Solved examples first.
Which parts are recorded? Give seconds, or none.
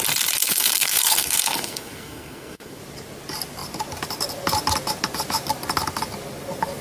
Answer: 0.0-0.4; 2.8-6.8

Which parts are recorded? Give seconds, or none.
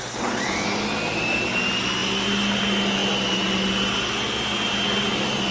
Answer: 0.0-5.5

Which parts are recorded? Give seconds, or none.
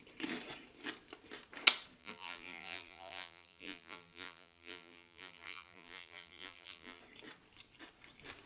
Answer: 0.0-2.0; 7.0-8.5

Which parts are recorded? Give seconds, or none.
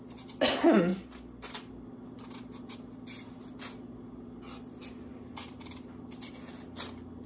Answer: 0.0-7.3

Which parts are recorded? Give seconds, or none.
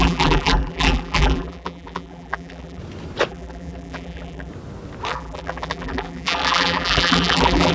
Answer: 2.8-3.3; 4.5-5.1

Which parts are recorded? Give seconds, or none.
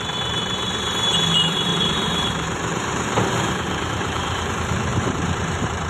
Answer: 0.0-1.7; 4.5-4.9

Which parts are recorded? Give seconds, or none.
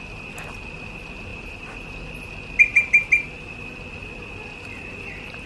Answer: 0.0-1.3; 2.0-5.5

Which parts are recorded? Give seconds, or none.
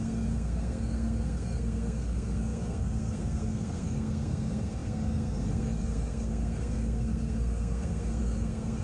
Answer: none